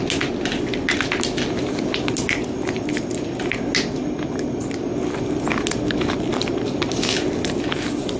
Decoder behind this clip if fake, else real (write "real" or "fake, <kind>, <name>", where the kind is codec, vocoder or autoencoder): real